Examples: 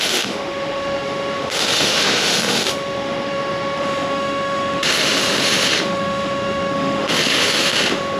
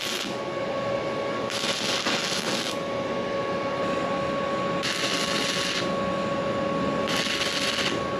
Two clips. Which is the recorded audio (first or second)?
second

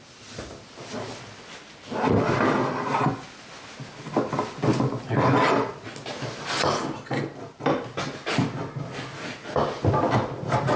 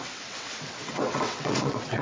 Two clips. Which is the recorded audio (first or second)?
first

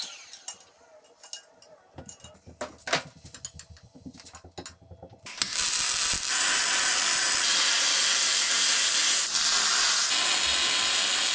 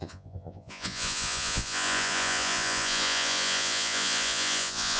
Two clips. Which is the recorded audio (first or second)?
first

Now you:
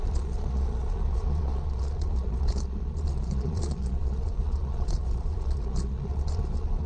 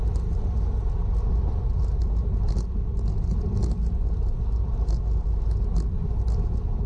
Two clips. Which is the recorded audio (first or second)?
second